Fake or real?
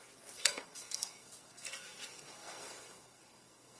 fake